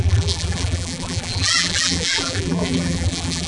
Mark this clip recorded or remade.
remade